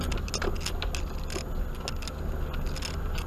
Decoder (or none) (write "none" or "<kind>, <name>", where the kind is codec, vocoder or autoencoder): none